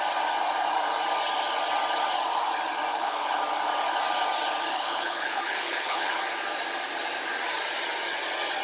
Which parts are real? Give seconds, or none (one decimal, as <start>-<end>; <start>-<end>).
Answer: 0.0-2.9; 3.4-4.7; 6.2-8.6